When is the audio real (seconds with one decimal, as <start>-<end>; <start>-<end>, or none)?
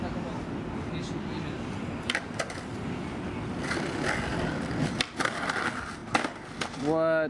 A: 0.0-7.3